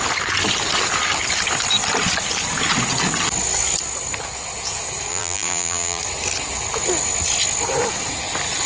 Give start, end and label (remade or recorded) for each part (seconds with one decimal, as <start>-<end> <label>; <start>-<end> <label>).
0.0-5.1 recorded; 5.1-6.0 remade; 6.0-8.7 recorded